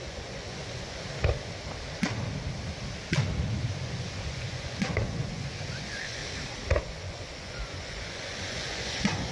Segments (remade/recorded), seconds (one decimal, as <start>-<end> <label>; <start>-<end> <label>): 0.0-1.1 remade; 1.1-3.8 recorded; 3.8-6.2 remade; 6.2-6.8 recorded; 6.8-9.3 remade